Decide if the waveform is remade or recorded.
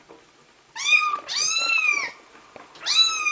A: recorded